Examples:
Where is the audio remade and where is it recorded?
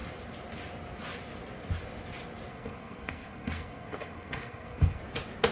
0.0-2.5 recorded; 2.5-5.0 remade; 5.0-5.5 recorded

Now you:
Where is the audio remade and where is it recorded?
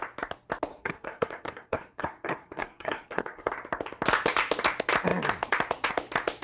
0.0-0.7 recorded; 0.7-3.5 remade; 3.5-6.4 recorded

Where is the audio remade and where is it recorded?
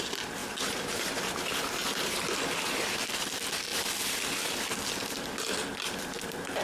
0.0-6.6 recorded